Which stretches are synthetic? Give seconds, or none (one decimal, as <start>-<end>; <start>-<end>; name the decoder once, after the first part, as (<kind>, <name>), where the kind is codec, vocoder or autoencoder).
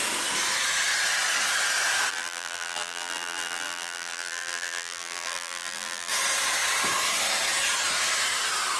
2.1-6.1 (vocoder, BigVGAN v2)